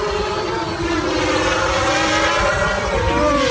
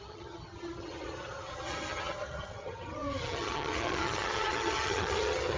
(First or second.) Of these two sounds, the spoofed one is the second